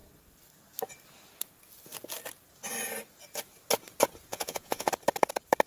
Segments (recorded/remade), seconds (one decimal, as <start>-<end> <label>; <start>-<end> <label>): 0.0-4.3 recorded; 4.3-4.9 remade; 4.9-5.7 recorded